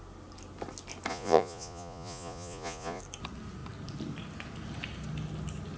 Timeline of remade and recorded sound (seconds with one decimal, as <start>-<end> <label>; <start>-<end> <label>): 0.0-1.1 recorded; 1.1-3.0 remade; 3.0-5.8 recorded